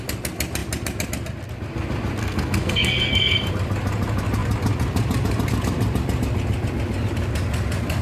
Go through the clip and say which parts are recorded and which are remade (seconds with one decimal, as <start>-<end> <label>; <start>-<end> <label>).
0.0-2.2 recorded; 2.2-3.5 remade; 3.5-8.0 recorded

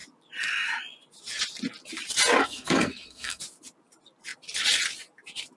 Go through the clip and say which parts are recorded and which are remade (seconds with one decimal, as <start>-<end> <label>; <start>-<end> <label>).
0.0-2.4 recorded; 2.4-3.4 remade; 3.4-5.6 recorded

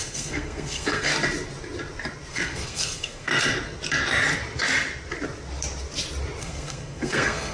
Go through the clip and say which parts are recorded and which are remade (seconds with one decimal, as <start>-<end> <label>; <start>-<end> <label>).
0.0-1.1 remade; 1.1-2.3 recorded; 2.3-3.3 remade; 3.3-6.4 recorded; 6.4-7.5 remade

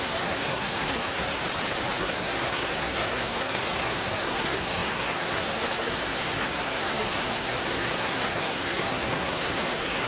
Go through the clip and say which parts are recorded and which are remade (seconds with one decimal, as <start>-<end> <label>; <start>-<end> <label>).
0.0-1.4 remade; 1.4-2.0 recorded; 2.0-10.1 remade